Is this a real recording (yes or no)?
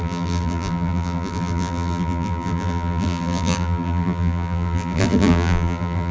no